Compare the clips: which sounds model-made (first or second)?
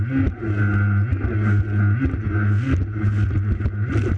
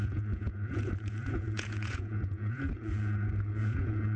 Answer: second